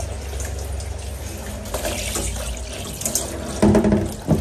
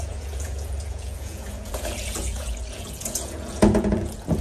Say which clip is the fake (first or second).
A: second